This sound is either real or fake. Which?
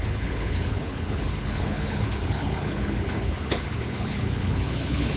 fake